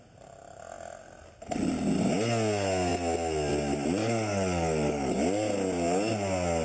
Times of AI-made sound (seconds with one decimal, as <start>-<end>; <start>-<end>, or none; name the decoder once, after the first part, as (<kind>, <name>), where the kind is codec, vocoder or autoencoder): 4.0-5.1 (codec, DAC)